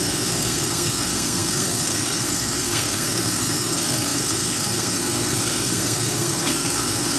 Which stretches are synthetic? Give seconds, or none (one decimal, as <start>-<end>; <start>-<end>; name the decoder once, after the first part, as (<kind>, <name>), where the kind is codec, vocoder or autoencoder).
0.0-7.2 (codec, SNAC)